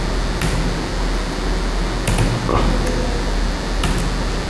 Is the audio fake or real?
real